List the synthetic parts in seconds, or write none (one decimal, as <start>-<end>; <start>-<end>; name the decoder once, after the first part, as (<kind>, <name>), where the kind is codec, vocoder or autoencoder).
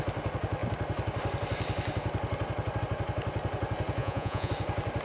4.0-4.5 (vocoder, Vocos)